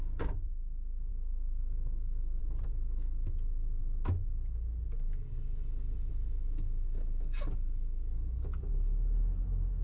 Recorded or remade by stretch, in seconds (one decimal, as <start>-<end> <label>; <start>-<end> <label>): 0.0-1.1 recorded; 1.1-2.4 remade; 2.4-9.8 recorded